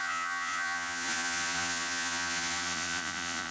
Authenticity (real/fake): fake